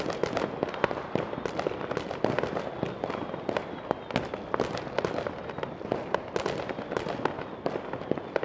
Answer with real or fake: real